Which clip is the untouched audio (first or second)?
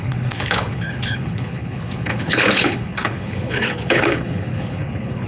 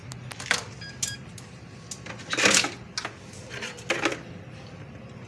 second